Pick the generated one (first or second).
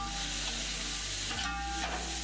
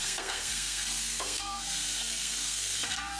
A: second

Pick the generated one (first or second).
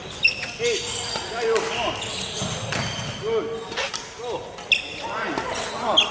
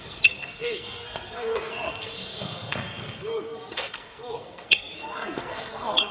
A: second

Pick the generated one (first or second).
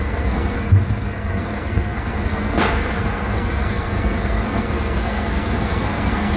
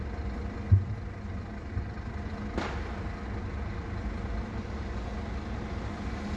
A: first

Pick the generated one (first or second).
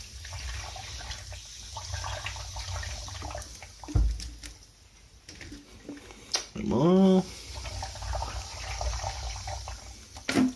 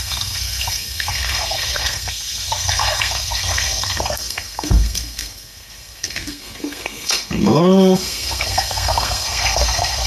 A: second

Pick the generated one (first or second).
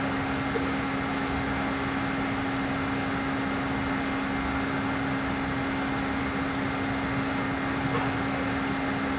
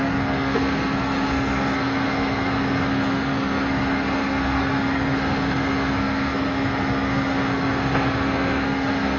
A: second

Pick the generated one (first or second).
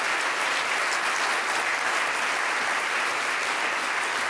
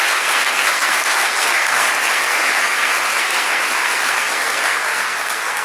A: second